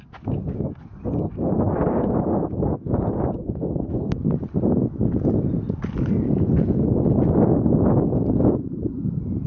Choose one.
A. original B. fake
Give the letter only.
A